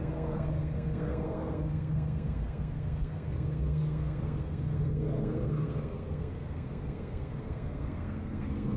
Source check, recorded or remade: remade